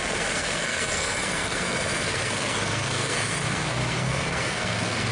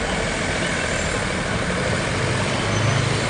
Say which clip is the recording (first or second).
second